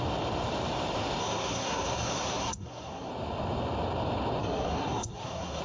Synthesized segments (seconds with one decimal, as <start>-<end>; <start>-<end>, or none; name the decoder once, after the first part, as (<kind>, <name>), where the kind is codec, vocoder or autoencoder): 1.2-3.1 (codec, SNAC); 4.4-5.6